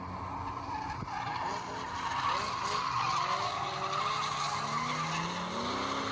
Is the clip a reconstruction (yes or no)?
no